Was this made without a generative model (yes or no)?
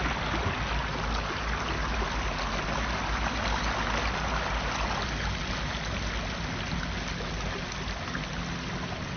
yes